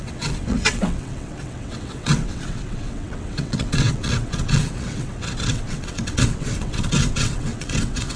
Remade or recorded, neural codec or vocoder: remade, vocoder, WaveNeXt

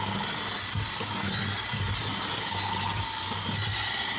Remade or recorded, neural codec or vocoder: recorded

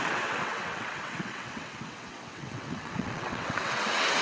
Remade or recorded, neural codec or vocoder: remade, vocoder, WaveNeXt